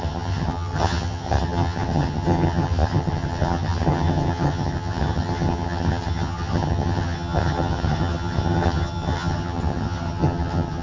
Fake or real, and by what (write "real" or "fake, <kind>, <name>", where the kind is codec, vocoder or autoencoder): fake, vocoder, HiFi-GAN